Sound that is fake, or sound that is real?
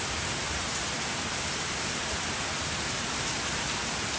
real